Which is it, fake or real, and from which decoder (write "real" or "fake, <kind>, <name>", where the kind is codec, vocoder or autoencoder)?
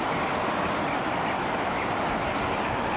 real